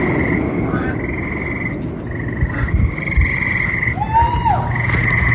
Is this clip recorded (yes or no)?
yes